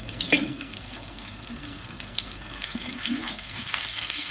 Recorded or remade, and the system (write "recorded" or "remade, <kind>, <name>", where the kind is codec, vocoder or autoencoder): remade, codec, SNAC